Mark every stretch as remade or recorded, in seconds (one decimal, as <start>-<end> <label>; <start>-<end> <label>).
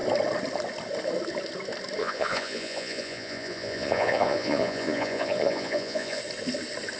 0.0-2.0 recorded; 2.0-6.2 remade; 6.2-7.0 recorded